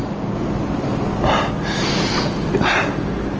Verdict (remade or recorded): recorded